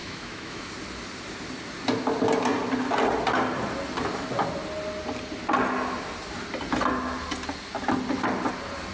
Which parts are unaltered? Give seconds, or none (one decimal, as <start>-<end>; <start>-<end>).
0.7-8.9